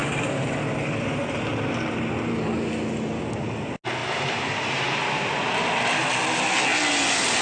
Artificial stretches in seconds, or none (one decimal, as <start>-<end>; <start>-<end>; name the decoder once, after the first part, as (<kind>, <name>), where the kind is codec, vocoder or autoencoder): 4.0-4.8 (vocoder, BigVGAN v2)